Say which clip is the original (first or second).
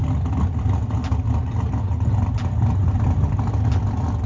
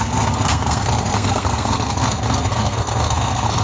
first